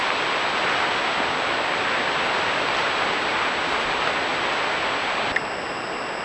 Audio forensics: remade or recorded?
recorded